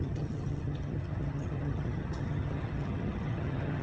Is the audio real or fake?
fake